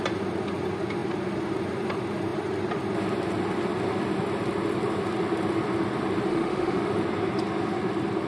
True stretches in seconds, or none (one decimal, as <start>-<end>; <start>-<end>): 0.0-6.3; 6.8-8.3